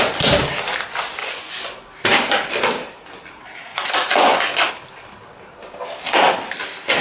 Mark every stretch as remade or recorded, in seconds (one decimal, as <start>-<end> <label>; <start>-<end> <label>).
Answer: 0.0-1.2 recorded; 1.2-1.9 remade; 1.9-3.7 recorded; 3.7-4.7 remade; 4.7-7.0 recorded